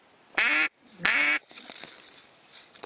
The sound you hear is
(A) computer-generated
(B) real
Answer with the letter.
B